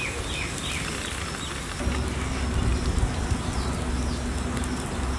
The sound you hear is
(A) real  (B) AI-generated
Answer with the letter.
A